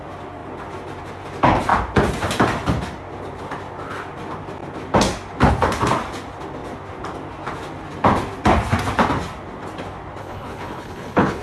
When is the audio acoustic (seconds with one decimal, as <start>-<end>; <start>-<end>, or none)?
0.0-10.2